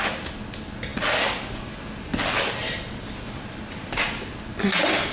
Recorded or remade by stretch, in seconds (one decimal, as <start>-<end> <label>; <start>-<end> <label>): 0.0-2.6 recorded; 2.6-3.9 remade; 3.9-5.1 recorded